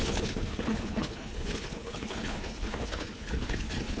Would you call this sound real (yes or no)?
no